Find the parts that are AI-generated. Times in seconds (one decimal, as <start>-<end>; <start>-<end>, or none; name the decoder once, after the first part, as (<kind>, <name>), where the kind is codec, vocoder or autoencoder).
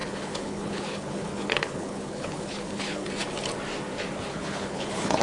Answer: 0.0-3.1 (codec, HILCodec); 4.3-5.2